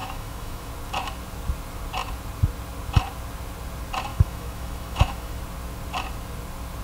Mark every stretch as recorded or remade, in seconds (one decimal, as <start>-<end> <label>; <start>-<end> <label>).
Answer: 0.0-0.7 remade; 0.7-4.1 recorded; 4.1-5.4 remade; 5.4-6.8 recorded